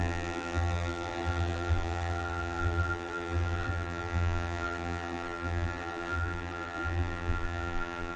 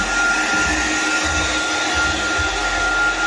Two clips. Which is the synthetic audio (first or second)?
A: first